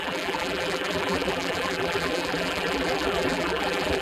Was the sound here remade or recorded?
remade